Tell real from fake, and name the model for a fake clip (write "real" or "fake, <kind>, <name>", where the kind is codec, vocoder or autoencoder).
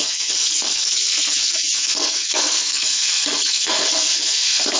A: fake, codec, SNAC